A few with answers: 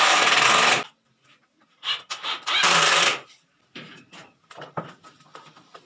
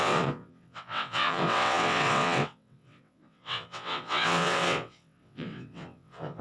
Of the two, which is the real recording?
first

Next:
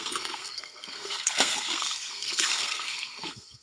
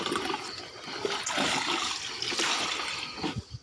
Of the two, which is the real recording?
second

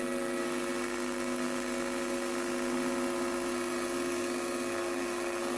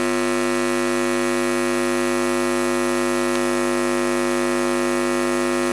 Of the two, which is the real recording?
second